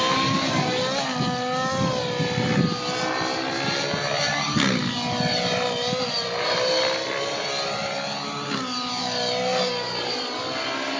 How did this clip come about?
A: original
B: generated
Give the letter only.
A